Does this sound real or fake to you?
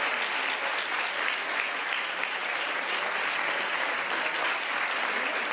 real